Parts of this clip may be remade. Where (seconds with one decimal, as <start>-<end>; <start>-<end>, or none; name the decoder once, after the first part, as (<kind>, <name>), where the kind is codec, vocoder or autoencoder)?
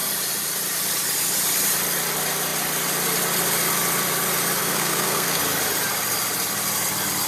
4.6-5.4 (codec, SNAC)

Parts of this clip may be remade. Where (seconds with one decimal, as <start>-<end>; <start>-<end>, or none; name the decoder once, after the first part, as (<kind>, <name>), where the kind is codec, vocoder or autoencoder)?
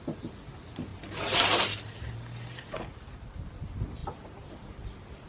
none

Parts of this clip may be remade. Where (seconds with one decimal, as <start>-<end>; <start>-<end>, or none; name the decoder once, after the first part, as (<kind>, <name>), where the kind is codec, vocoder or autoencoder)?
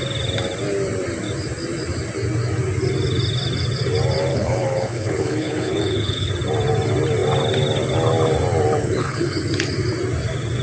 4.3-6.3 (codec, HILCodec); 8.8-9.4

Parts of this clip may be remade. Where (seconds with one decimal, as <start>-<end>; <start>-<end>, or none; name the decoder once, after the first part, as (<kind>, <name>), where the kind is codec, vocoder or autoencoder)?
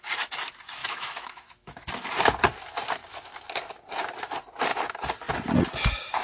0.8-1.9 (autoencoder, DAC-VAE)